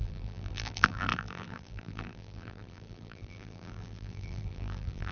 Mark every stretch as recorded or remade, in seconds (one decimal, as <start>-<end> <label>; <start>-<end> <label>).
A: 0.0-5.1 remade